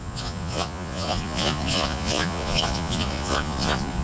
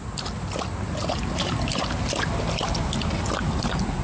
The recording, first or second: second